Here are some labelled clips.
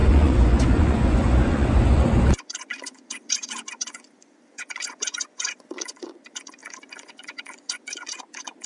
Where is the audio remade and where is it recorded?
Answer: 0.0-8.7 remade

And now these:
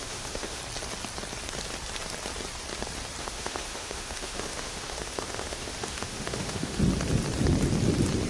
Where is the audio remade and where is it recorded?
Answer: 0.0-0.6 remade; 0.6-3.2 recorded; 3.2-6.8 remade; 6.8-8.3 recorded

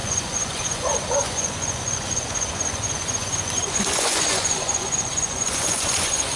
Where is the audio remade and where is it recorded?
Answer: 0.0-6.4 remade

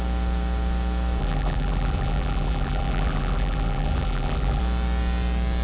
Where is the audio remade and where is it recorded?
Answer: 0.0-1.2 recorded; 1.2-4.6 remade; 4.6-5.6 recorded

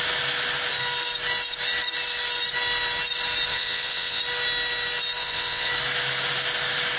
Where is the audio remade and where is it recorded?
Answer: 0.0-3.5 recorded; 3.5-4.2 remade; 4.2-5.2 recorded; 5.2-5.7 remade; 5.7-7.0 recorded